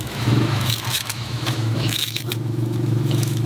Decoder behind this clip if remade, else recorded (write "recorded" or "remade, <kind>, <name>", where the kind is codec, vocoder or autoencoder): remade, autoencoder, DAC-VAE